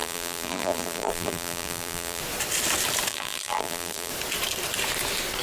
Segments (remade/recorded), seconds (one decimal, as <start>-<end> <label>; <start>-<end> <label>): 0.0-2.2 remade; 2.2-3.1 recorded; 3.1-4.1 remade; 4.1-5.4 recorded